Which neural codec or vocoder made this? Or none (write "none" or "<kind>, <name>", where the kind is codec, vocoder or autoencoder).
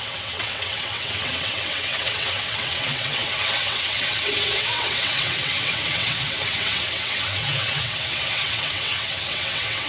vocoder, WaveNeXt